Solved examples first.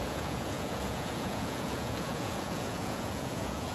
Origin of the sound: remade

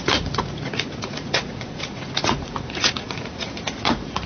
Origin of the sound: remade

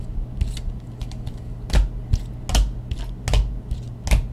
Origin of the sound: recorded